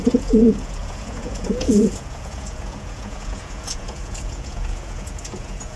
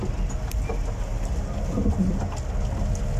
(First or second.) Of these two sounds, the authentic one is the second